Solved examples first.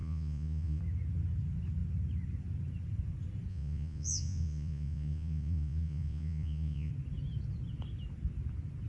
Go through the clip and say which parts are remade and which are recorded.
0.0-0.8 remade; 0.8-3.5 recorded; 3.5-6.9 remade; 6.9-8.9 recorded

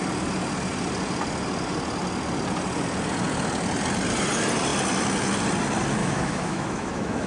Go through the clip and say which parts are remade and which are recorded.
0.0-6.0 recorded; 6.0-7.3 remade

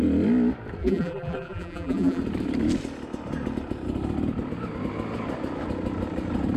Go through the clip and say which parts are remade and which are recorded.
0.0-0.8 recorded; 0.8-2.2 remade; 2.2-6.6 recorded